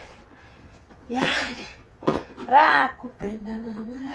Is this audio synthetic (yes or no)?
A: yes